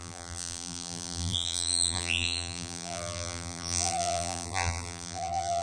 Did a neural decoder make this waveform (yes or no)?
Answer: yes